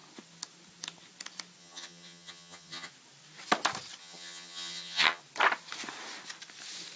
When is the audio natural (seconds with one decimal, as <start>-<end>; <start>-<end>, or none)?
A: 0.0-1.6; 2.9-4.0; 5.2-7.0